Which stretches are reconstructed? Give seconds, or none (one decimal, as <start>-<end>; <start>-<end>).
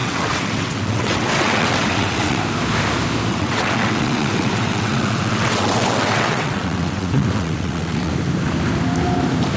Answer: 0.0-2.4; 3.3-8.1